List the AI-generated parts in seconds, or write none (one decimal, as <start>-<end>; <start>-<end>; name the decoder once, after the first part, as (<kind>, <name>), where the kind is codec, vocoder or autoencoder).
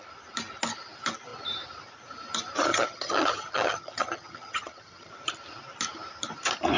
2.7-5.1 (vocoder, HiFi-GAN)